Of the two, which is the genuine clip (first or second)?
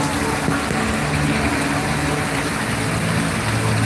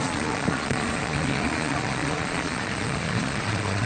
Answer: first